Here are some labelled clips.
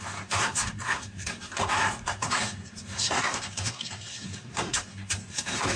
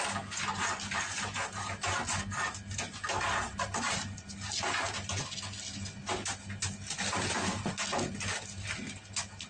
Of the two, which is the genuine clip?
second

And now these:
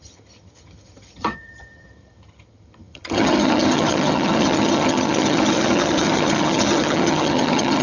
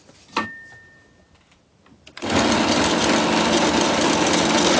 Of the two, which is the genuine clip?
second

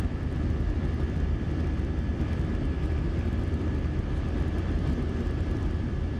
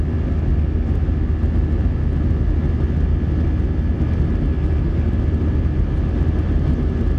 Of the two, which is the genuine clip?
second